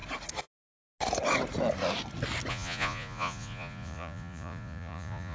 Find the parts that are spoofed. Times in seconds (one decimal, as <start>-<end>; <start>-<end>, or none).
2.5-5.3